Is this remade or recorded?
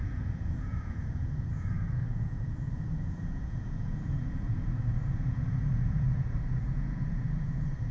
remade